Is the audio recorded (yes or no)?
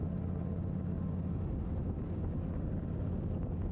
yes